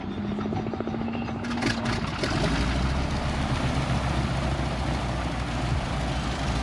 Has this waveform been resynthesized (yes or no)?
no